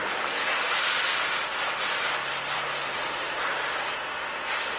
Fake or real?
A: real